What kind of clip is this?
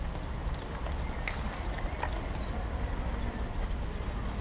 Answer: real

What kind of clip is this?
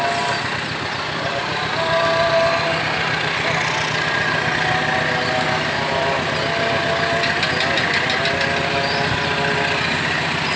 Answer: real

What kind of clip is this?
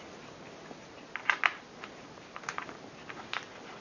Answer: real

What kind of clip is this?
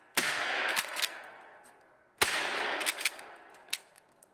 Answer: fake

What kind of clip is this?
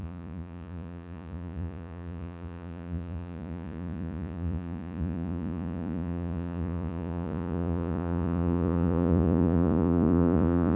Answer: fake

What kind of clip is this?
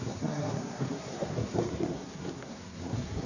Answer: fake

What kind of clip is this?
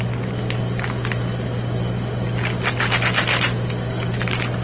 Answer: real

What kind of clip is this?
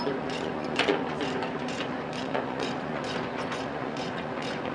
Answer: fake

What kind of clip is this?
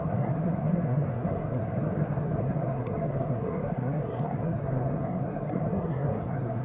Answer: fake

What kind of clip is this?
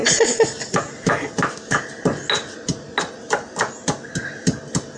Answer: real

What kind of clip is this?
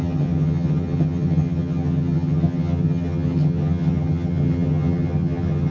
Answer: fake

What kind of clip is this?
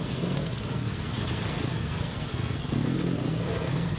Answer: fake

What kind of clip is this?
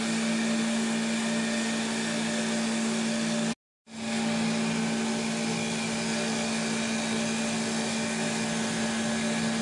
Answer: real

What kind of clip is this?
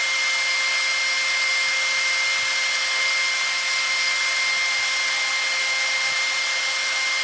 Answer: real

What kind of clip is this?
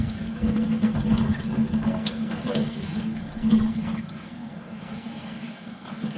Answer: fake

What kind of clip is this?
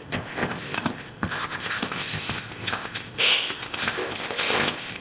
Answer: fake